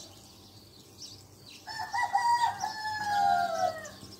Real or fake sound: real